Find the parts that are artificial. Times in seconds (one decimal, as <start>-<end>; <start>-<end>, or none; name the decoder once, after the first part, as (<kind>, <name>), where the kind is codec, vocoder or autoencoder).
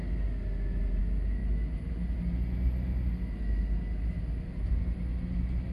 none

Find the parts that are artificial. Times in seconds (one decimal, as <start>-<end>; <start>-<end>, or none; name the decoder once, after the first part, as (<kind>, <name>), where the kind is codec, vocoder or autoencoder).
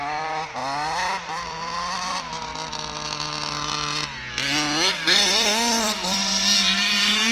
0.0-2.5 (vocoder, BigVGAN v2); 4.9-6.2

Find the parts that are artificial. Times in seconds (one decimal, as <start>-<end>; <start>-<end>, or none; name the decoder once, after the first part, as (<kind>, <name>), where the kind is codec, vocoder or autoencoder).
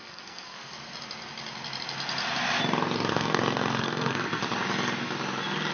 0.0-0.7 (codec, SNAC); 3.1-4.4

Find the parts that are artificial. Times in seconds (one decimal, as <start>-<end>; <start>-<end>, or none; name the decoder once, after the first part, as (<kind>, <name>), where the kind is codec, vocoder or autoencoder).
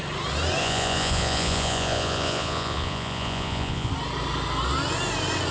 0.6-3.9 (vocoder, Vocos)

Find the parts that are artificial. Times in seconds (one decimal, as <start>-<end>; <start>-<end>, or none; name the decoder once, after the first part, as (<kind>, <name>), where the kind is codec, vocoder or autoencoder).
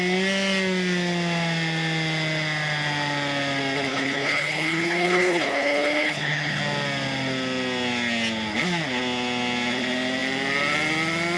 3.9-6.6 (codec, HILCodec)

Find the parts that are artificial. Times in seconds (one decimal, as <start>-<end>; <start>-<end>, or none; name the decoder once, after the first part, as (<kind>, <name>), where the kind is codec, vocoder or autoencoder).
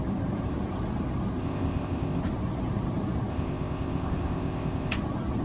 1.4-2.2 (codec, ZipCodec); 3.3-4.9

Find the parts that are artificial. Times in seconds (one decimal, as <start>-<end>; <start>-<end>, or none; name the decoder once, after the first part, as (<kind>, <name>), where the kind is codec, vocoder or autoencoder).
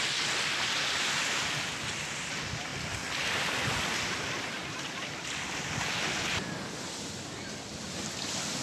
none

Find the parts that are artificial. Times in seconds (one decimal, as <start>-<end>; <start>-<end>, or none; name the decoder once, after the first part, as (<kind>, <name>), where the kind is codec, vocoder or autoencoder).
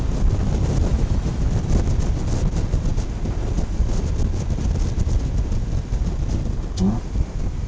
0.9-1.4 (autoencoder, DAC-VAE)